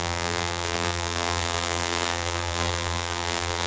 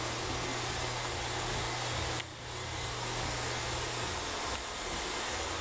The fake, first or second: first